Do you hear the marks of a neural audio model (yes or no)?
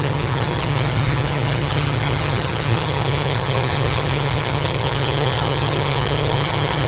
yes